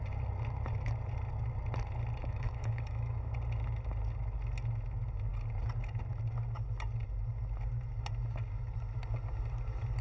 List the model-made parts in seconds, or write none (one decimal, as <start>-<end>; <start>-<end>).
2.2-3.3